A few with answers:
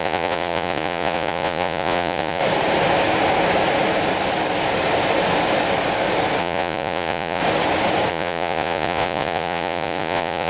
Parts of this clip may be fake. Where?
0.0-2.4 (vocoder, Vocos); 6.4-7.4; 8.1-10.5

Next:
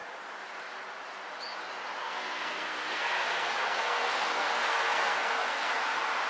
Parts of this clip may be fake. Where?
2.0-5.8 (codec, SNAC)

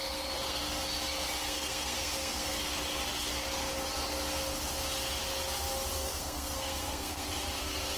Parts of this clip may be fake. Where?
0.0-0.6 (codec, SNAC); 1.4-2.6; 6.0-7.3

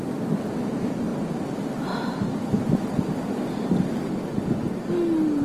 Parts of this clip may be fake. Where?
none

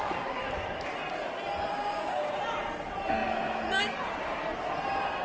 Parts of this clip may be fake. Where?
1.7-2.3 (codec, DAC)

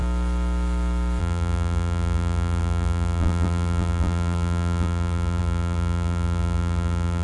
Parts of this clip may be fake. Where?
1.2-7.2 (vocoder, BigVGAN v2)

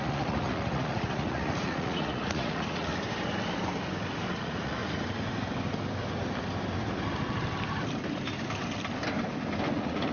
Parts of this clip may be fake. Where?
0.0-2.9 (vocoder, Vocos); 4.3-4.8; 9.7-10.1

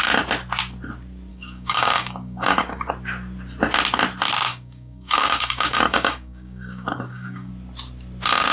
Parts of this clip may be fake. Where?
1.3-2.9 (codec, DAC); 4.5-7.5